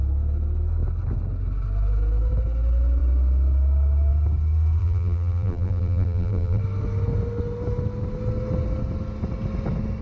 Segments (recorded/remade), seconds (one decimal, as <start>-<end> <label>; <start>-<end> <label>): 0.0-4.8 recorded; 4.8-6.6 remade; 6.6-10.0 recorded